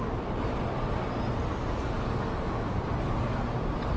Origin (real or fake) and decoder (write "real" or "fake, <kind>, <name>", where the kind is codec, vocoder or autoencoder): real